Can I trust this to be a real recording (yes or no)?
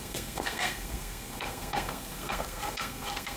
no